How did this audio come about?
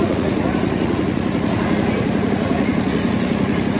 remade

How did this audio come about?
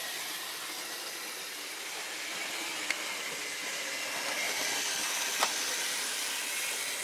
recorded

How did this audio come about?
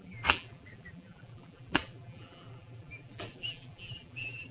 remade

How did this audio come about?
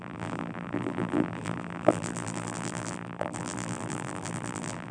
remade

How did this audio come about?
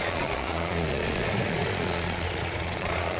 remade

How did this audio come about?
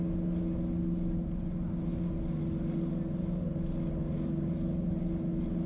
recorded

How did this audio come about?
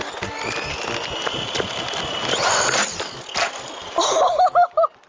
recorded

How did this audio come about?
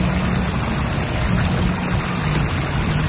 recorded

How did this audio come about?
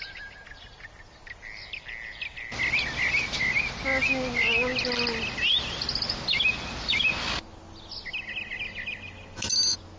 recorded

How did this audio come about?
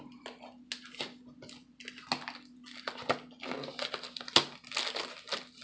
recorded